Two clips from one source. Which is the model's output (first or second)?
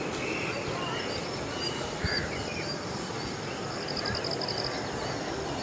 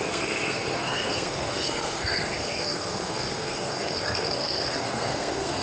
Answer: second